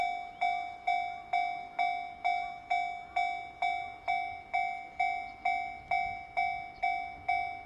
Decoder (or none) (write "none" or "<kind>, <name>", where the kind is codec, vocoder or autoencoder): none